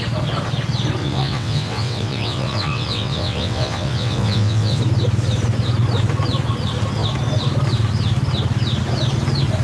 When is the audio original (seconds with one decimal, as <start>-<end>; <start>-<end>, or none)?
0.0-1.0; 4.8-9.6